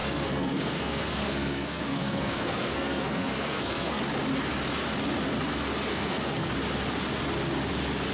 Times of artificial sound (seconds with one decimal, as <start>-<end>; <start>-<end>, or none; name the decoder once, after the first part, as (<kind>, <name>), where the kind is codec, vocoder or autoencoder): 0.0-4.0 (codec, SNAC); 5.9-6.5